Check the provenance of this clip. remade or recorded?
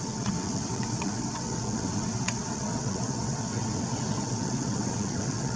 remade